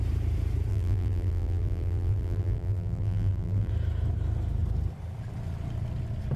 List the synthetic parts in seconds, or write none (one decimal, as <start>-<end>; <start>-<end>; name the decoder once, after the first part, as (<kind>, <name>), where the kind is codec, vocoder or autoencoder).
0.7-3.7 (vocoder, BigVGAN v2)